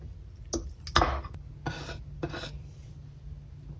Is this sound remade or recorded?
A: recorded